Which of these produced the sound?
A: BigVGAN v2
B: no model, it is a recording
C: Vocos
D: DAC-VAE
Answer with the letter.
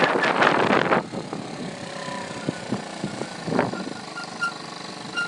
A